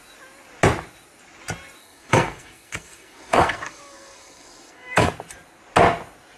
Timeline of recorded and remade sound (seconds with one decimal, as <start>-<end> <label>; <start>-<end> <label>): 0.0-1.8 recorded; 1.8-5.1 remade; 5.1-6.4 recorded